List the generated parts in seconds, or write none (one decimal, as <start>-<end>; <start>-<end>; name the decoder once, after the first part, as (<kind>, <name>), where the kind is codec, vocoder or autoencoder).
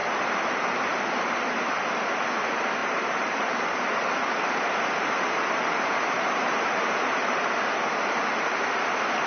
0.0-1.0 (vocoder, BigVGAN v2); 2.8-7.5